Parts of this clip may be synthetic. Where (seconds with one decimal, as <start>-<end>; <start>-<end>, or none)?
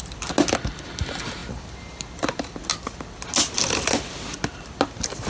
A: none